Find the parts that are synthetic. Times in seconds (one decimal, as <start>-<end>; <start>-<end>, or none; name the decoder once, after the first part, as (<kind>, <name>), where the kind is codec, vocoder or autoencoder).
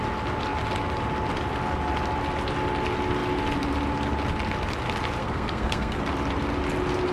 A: 5.2-6.0 (codec, SNAC)